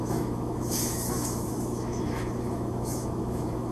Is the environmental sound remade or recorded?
remade